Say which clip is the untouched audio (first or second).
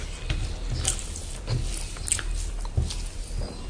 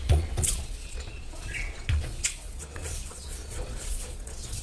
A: first